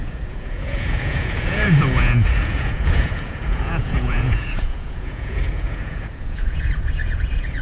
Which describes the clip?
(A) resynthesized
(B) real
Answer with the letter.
A